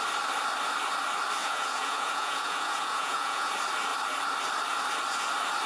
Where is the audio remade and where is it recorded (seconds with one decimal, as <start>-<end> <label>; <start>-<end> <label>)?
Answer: 0.0-1.4 recorded; 1.4-3.5 remade; 3.5-5.7 recorded